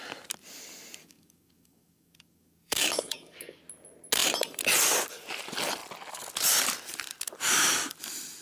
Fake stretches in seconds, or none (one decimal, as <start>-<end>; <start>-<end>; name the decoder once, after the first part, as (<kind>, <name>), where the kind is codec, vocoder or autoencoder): 1.0-3.6 (codec, DAC)